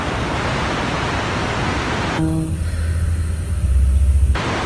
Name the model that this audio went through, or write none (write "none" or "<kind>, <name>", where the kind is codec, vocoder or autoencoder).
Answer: none